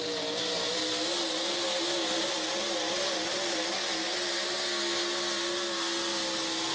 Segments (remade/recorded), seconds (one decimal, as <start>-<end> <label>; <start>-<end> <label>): 0.0-6.7 recorded